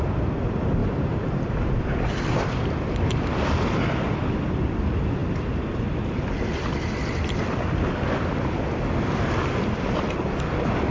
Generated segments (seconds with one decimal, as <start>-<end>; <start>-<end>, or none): 0.8-3.3